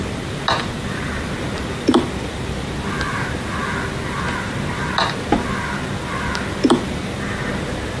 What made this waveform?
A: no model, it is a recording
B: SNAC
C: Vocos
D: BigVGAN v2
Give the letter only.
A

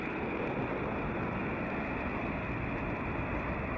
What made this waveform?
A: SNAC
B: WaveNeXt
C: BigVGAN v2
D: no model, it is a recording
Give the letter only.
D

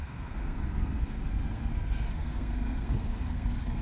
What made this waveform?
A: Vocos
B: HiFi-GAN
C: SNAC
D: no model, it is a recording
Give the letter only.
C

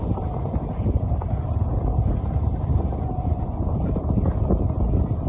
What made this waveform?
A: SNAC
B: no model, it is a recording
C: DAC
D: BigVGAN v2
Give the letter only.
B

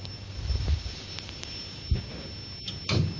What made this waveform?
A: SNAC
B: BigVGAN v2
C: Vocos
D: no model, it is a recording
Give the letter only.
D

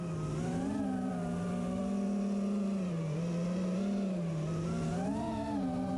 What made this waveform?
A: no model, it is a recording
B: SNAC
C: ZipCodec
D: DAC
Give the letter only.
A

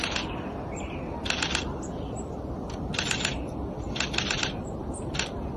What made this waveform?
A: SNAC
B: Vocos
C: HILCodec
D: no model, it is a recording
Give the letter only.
D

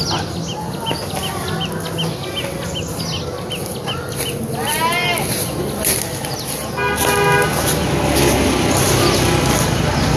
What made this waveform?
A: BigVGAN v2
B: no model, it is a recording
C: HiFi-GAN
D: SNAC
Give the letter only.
B